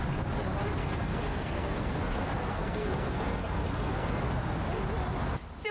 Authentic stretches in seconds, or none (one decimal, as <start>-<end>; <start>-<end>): 0.0-0.8; 4.2-5.7